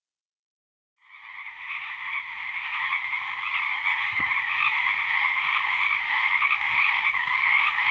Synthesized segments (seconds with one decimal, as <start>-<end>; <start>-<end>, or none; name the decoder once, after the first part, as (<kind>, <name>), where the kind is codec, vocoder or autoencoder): 1.4-3.4 (autoencoder, DAC-VAE); 3.9-7.9